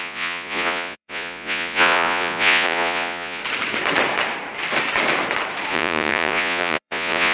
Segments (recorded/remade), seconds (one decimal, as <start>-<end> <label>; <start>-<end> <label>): 0.0-3.4 remade; 3.4-5.7 recorded; 5.7-7.3 remade